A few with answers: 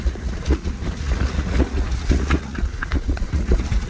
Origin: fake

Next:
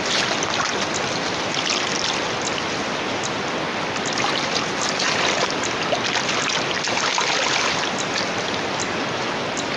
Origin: real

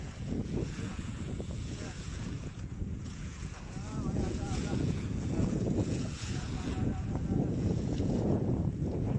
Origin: fake